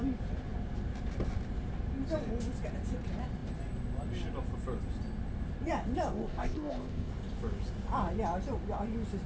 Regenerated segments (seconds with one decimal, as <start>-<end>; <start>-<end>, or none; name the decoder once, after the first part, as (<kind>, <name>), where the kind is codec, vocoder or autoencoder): 6.1-7.1 (codec, ZipCodec)